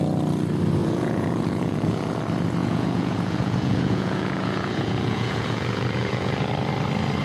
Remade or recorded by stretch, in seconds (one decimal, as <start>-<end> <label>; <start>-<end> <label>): 0.0-0.8 recorded; 0.8-2.2 remade; 2.2-2.6 recorded; 2.6-6.5 remade; 6.5-7.2 recorded

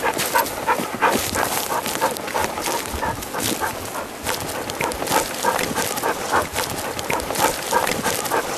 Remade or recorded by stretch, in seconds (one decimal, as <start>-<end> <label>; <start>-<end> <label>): 0.0-8.6 recorded

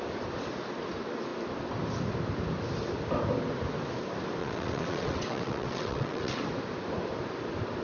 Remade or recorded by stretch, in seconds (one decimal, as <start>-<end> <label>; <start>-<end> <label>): 0.0-4.4 recorded; 4.4-6.4 remade; 6.4-7.8 recorded

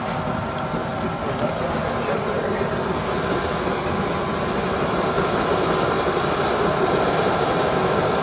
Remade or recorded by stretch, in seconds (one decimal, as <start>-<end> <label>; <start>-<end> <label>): 0.0-8.2 recorded

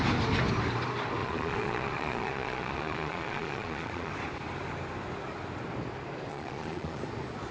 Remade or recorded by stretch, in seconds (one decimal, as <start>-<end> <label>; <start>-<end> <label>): 0.0-1.2 recorded; 1.2-4.1 remade; 4.1-6.3 recorded; 6.3-7.0 remade; 7.0-7.5 recorded